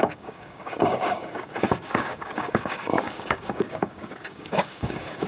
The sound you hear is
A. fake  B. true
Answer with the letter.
A